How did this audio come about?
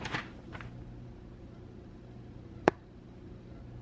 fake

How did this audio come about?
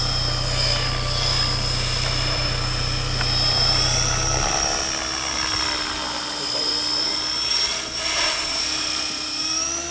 fake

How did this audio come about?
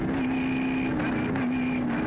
real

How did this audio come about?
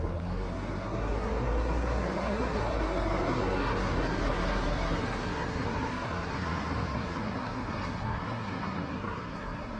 fake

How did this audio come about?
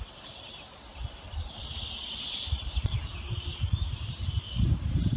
fake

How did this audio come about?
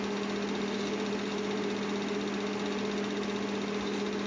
real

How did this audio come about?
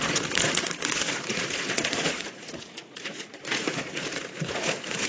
fake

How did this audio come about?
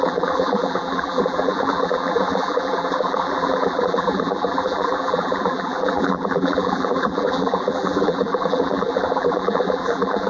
fake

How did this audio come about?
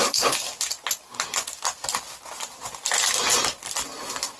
real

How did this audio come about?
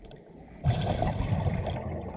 real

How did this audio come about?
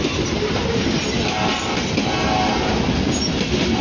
real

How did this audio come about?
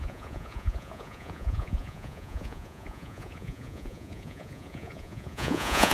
fake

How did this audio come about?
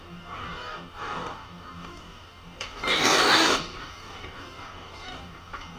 fake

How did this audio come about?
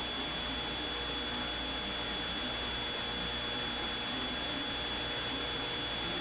real